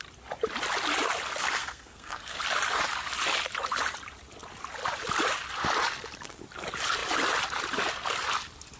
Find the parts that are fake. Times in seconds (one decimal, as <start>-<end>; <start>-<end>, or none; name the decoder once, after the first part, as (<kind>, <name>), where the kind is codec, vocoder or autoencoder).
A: 1.6-2.4 (codec, SNAC)